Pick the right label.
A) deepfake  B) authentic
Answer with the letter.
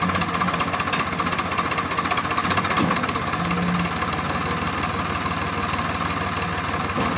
B